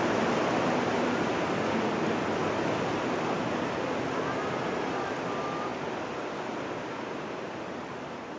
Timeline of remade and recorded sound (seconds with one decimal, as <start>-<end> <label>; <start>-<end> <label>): 0.0-8.4 recorded